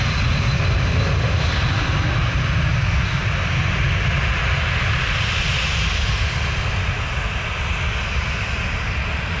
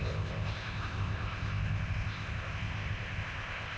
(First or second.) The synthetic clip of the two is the second